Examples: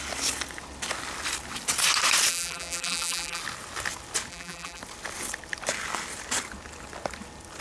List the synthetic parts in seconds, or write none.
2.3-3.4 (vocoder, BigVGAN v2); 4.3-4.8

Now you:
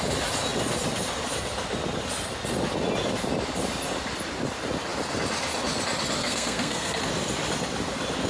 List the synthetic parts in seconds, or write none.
6.2-7.0 (codec, SNAC)

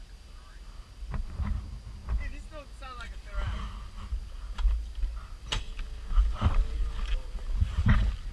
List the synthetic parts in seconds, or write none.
none

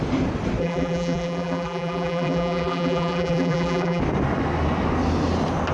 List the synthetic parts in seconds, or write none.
0.6-4.0 (vocoder, BigVGAN v2)

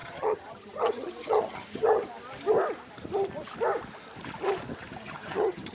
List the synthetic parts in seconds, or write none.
0.0-2.0 (vocoder, HiFi-GAN); 5.0-5.7

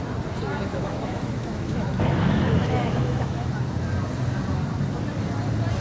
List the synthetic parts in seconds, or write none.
0.7-3.5 (autoencoder, DAC-VAE)